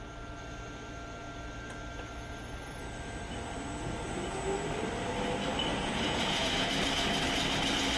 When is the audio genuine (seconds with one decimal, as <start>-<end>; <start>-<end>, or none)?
0.0-5.7; 6.7-8.0